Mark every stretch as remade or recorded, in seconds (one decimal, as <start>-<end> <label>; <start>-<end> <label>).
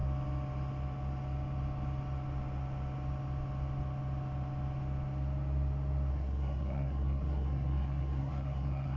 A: 0.0-6.1 recorded; 6.1-9.0 remade